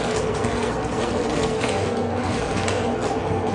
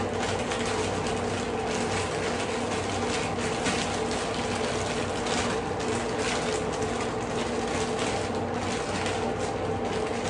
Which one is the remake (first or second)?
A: first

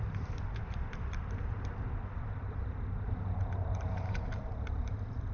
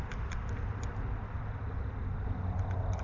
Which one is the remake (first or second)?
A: first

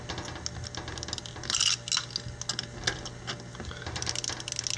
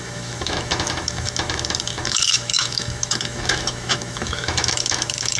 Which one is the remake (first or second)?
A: second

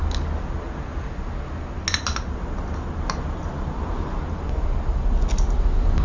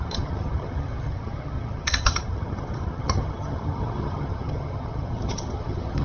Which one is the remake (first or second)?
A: second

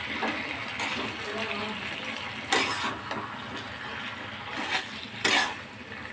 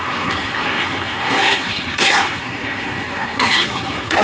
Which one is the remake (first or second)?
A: second